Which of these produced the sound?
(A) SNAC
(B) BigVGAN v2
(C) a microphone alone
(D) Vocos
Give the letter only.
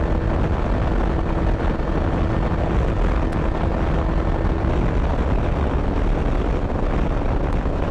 C